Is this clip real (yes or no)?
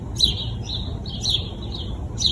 yes